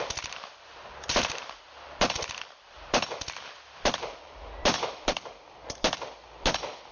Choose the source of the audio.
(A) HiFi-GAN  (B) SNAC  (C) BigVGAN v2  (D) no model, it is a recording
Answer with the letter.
D